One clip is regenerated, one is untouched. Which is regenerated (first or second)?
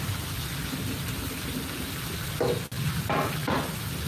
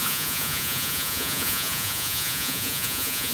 second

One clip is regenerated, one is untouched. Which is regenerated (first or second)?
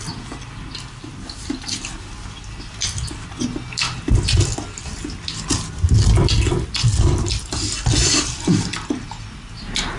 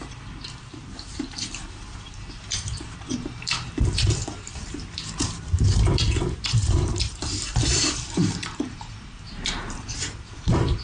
second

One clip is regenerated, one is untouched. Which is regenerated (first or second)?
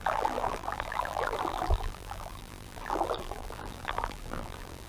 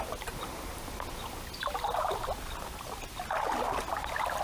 first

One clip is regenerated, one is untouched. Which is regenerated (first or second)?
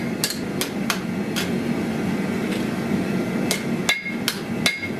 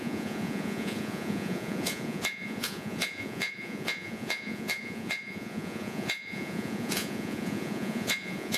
second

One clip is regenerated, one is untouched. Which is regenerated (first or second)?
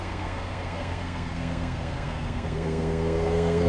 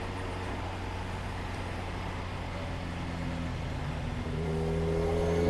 first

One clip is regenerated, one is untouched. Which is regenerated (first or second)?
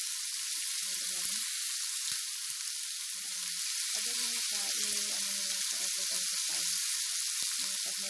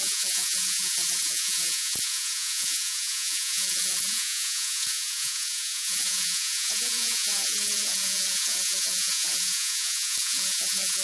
second